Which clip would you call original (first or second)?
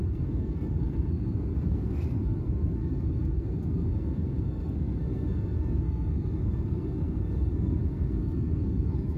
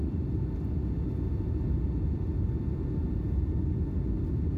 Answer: second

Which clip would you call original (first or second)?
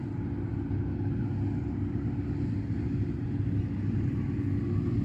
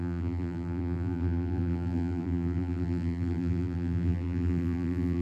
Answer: first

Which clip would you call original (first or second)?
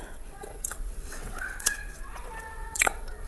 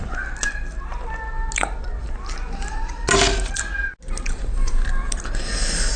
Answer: second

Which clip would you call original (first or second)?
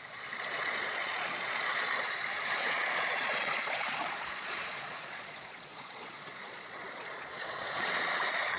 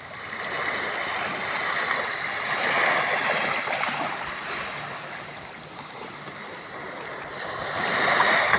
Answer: second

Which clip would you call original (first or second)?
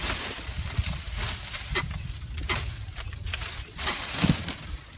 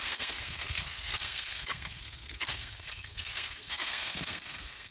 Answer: first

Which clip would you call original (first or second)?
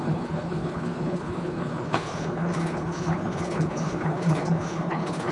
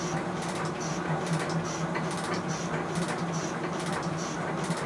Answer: second